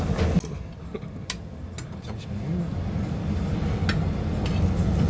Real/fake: real